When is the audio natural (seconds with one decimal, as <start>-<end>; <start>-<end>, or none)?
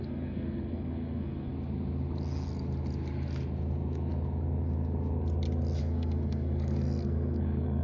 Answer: 1.5-5.8